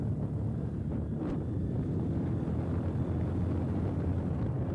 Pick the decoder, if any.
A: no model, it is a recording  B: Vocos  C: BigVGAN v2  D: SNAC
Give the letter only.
C